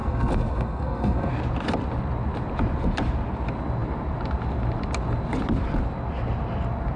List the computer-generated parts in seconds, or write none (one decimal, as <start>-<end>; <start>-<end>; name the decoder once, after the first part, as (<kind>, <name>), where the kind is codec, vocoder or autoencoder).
0.0-1.3 (codec, SNAC)